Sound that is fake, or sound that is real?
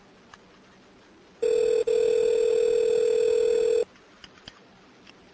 real